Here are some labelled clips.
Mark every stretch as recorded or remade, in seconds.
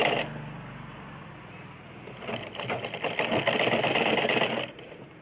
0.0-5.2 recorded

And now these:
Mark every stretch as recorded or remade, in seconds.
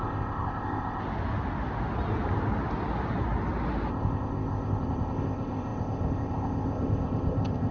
0.0-1.0 remade; 1.0-3.9 recorded; 3.9-7.7 remade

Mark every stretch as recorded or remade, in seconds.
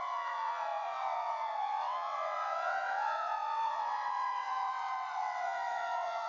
0.0-6.3 remade